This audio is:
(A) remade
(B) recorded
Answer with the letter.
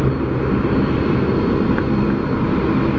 B